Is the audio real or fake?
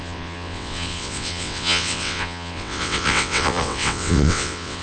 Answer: fake